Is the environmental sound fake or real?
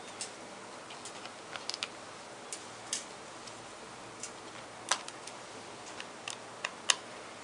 real